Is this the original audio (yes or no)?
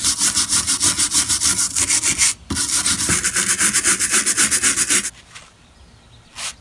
yes